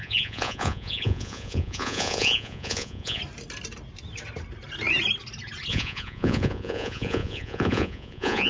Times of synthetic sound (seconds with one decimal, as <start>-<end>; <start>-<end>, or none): 0.0-3.2; 5.7-8.5